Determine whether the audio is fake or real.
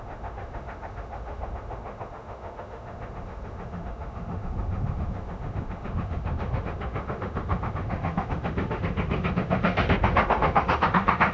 fake